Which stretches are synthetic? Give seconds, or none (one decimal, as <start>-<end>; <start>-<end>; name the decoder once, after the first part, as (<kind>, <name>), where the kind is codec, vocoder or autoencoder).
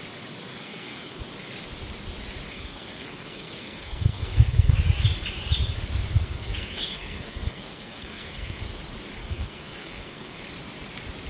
0.5-1.2 (codec, SNAC); 2.5-4.8; 6.1-8.6; 9.2-10.4